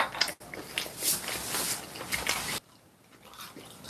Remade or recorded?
recorded